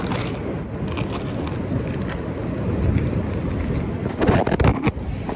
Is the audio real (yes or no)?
yes